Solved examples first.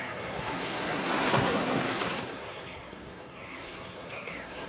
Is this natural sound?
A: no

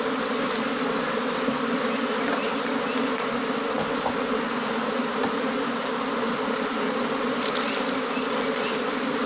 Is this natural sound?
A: yes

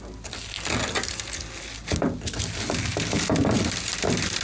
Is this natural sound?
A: yes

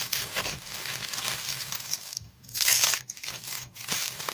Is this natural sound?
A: no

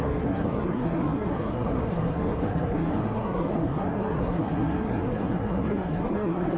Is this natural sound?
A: no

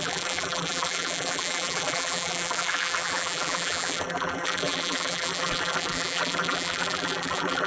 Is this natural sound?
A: no